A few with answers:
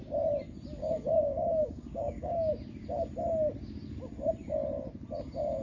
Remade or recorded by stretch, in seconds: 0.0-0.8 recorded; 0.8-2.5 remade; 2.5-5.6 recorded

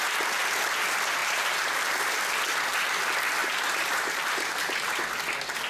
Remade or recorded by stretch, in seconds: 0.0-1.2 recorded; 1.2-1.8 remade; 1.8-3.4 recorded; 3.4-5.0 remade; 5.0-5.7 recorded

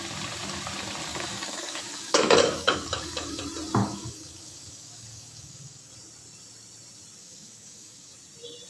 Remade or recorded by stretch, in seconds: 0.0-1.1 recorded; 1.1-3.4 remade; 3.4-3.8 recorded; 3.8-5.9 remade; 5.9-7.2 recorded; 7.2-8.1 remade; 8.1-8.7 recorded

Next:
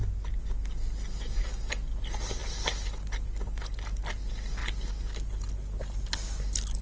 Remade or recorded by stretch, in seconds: 0.0-6.8 recorded

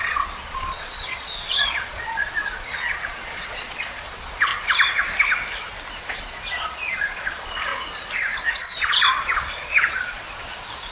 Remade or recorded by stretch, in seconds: 0.0-4.5 remade; 4.5-6.0 recorded; 6.0-7.7 remade; 7.7-8.5 recorded; 8.5-10.9 remade

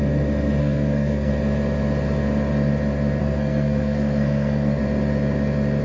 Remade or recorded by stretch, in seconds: 0.0-0.6 recorded; 0.6-1.3 remade; 1.3-3.2 recorded; 3.2-4.8 remade; 4.8-5.8 recorded